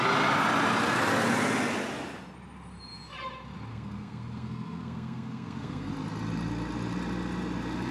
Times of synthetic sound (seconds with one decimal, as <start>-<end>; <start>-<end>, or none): 3.7-5.9